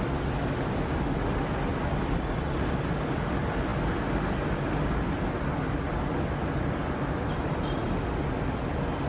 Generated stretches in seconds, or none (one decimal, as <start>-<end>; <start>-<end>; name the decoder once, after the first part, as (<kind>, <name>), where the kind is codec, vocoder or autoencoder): none